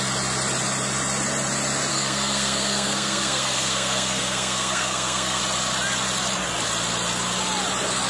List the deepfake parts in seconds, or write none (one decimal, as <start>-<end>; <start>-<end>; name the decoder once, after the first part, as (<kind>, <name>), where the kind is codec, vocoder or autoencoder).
1.9-5.4 (codec, SNAC)